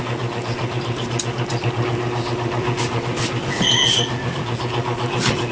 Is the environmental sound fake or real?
real